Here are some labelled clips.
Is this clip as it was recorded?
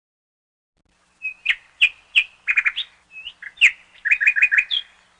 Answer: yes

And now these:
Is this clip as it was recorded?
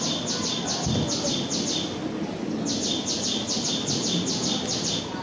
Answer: yes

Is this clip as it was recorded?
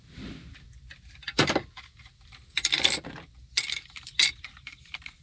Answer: yes